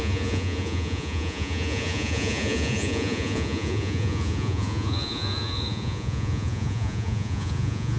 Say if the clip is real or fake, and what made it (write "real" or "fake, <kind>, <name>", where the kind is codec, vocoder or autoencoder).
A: fake, vocoder, Vocos